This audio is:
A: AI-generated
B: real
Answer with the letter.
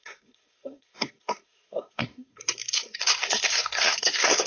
A